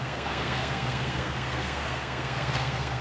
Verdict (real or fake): fake